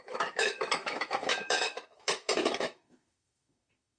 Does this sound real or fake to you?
fake